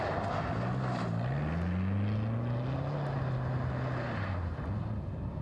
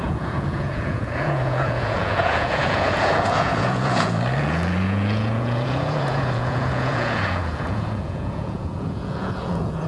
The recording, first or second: first